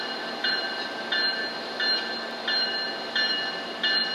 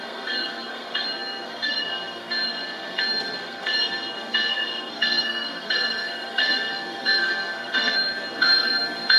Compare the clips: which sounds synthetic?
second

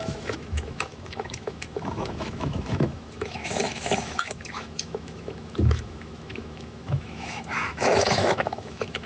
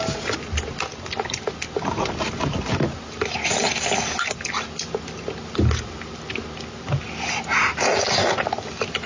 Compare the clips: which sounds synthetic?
first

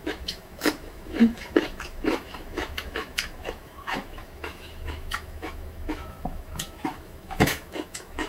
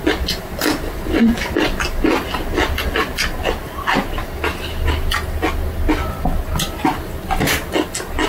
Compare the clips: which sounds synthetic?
first